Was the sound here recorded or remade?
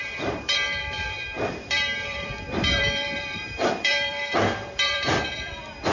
remade